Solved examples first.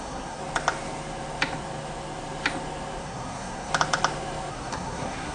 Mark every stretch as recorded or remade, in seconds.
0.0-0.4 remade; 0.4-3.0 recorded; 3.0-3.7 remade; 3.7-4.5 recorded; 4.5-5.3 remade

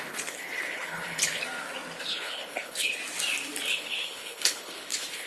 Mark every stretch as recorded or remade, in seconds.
0.0-1.4 remade; 1.4-2.0 recorded; 2.0-3.0 remade; 3.0-3.7 recorded; 3.7-5.3 remade

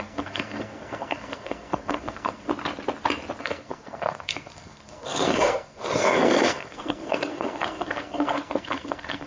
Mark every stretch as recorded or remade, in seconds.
0.0-2.5 remade; 2.5-3.4 recorded; 3.4-9.3 remade

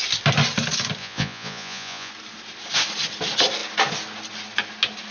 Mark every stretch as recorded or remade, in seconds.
0.0-1.0 recorded; 1.0-2.1 remade; 2.1-5.1 recorded

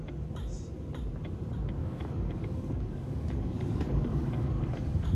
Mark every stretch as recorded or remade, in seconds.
0.0-1.8 recorded; 1.8-5.2 remade

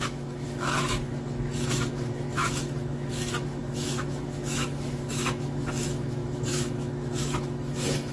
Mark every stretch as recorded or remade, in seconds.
0.0-8.1 remade

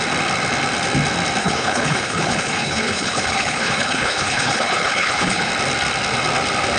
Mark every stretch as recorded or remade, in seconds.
0.0-1.4 recorded; 1.4-5.5 remade; 5.5-6.8 recorded